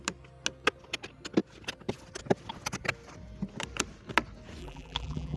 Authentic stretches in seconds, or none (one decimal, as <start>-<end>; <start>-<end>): 0.0-4.6